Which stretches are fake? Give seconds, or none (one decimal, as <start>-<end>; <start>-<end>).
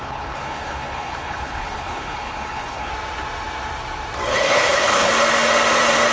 0.0-2.9; 4.3-5.1